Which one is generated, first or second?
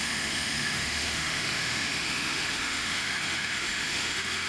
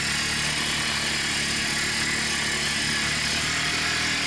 first